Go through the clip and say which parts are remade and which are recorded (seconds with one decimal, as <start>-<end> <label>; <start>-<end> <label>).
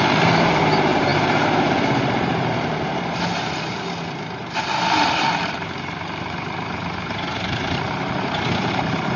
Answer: 0.0-9.2 remade